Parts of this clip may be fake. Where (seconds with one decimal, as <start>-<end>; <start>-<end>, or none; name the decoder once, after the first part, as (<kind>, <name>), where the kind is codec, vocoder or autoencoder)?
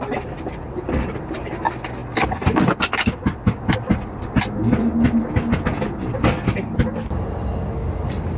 none